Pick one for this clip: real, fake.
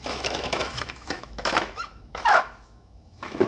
fake